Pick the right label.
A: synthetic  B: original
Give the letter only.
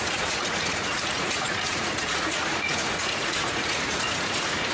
A